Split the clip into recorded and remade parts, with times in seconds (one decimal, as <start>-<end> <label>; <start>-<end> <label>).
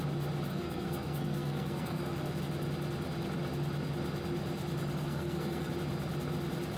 0.0-0.5 recorded; 0.5-2.4 remade; 2.4-5.0 recorded; 5.0-5.7 remade; 5.7-6.8 recorded